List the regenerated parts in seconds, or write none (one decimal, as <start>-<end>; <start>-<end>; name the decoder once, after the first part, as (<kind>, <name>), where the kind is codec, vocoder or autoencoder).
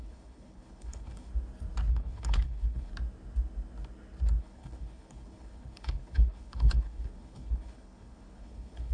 0.0-1.3 (codec, HILCodec); 1.9-2.9; 4.4-8.9